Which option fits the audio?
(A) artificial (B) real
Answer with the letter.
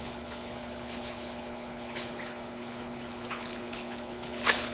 A